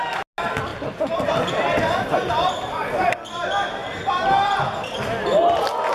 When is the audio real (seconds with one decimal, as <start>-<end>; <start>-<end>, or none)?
0.0-5.9